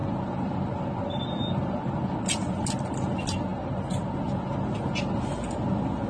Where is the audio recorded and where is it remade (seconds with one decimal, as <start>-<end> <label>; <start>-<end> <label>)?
0.0-6.1 recorded